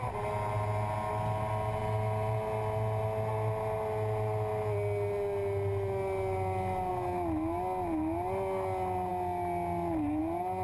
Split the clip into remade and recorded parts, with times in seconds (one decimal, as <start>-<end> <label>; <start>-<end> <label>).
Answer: 0.0-10.6 recorded